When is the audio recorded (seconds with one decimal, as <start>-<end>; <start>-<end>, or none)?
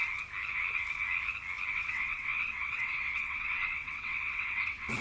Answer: 0.0-1.7